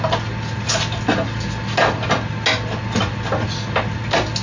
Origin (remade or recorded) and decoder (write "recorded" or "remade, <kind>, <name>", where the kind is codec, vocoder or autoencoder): recorded